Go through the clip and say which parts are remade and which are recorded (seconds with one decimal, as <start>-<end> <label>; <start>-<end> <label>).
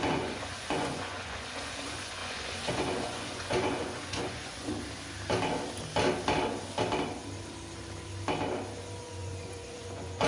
0.0-4.7 remade; 4.7-9.0 recorded; 9.0-10.3 remade